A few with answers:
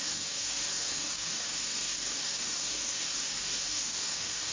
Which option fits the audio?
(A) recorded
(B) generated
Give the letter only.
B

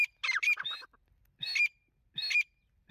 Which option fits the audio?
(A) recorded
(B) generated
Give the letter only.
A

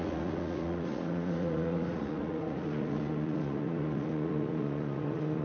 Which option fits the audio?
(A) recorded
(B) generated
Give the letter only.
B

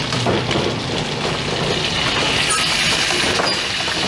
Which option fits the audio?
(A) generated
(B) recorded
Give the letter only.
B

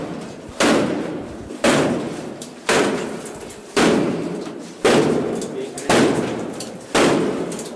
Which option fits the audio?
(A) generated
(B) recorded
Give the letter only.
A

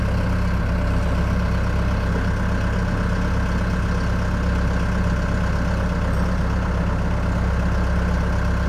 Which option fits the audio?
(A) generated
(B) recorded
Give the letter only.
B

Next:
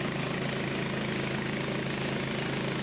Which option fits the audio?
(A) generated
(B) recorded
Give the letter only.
B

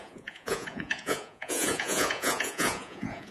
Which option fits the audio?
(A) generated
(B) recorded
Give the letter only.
A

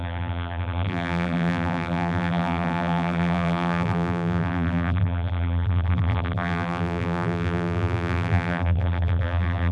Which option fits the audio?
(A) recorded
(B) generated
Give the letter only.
B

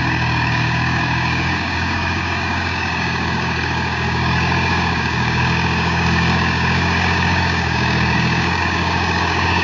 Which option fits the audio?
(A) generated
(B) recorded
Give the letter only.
A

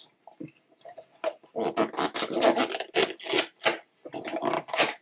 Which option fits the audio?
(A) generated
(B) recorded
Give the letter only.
B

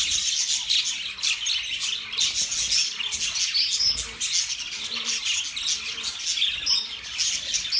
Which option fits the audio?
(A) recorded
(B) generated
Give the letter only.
A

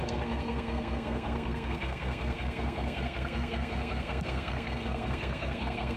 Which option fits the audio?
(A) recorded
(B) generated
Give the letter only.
B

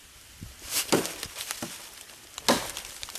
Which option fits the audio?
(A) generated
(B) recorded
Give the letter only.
B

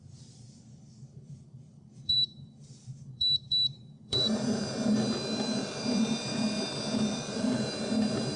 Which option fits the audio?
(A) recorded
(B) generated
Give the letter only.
B